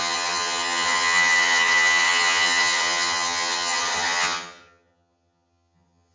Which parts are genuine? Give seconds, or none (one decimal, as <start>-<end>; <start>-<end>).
none